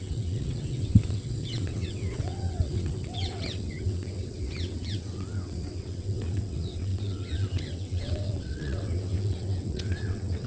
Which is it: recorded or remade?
remade